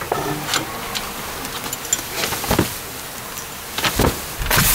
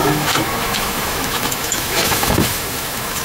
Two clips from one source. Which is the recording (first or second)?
first